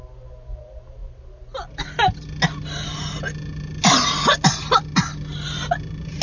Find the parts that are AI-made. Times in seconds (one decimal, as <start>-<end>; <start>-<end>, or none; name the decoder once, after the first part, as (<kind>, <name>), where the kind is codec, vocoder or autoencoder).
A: none